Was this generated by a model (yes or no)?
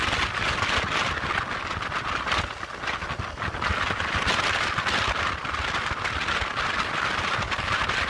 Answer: no